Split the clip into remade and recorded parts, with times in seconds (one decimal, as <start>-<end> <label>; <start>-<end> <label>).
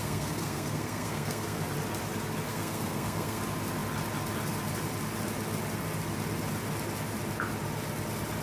0.0-1.6 remade; 1.6-2.5 recorded; 2.5-3.4 remade; 3.4-8.4 recorded